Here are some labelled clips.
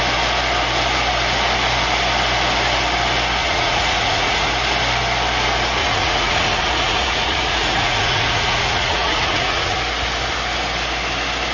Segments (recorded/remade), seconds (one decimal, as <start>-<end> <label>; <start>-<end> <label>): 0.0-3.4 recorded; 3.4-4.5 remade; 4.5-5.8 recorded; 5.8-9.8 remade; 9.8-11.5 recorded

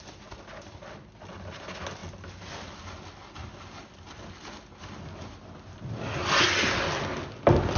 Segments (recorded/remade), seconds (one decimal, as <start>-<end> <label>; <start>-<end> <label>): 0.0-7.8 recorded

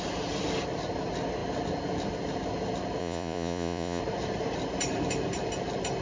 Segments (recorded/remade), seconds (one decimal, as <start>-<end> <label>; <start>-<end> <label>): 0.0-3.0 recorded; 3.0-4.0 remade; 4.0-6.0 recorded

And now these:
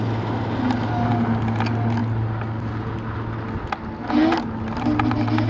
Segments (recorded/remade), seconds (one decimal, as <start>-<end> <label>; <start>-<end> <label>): 0.0-5.5 recorded

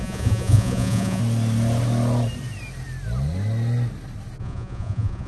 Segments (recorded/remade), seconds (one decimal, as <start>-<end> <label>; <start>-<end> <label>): 0.0-1.2 remade; 1.2-4.4 recorded; 4.4-5.3 remade

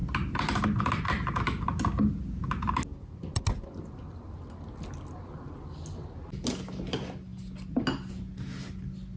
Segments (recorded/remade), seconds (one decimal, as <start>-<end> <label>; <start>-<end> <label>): 0.0-9.2 recorded

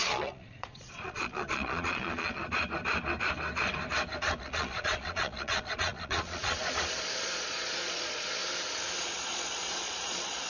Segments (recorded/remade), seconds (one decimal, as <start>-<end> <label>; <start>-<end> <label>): 0.0-2.4 remade; 2.4-4.4 recorded; 4.4-8.4 remade; 8.4-9.0 recorded; 9.0-10.5 remade